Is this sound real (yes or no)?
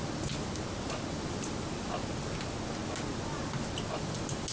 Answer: yes